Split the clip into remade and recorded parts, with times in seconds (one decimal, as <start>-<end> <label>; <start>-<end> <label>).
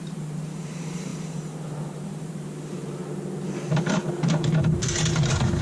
0.0-3.0 remade; 3.0-4.1 recorded; 4.1-5.6 remade